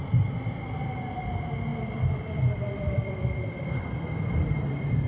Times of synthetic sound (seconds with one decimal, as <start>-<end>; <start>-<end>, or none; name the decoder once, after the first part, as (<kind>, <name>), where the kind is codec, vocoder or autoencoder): 0.0-1.0 (vocoder, BigVGAN v2); 1.7-5.1